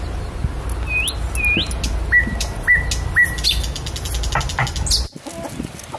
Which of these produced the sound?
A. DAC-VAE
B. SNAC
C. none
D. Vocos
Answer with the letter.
C